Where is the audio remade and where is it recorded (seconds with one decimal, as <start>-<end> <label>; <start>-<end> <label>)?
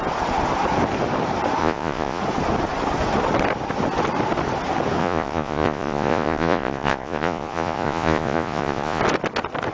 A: 0.0-1.6 recorded; 1.6-2.2 remade; 2.2-5.0 recorded; 5.0-9.0 remade; 9.0-9.7 recorded